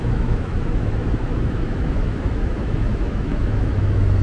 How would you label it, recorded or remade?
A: remade